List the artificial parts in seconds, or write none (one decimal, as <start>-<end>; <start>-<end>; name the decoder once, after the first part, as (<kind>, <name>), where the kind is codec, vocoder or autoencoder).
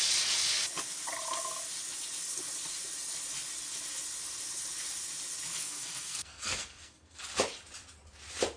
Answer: 5.6-7.2 (codec, SNAC)